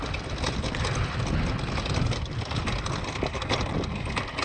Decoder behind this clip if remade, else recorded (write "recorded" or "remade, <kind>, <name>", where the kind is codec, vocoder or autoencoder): recorded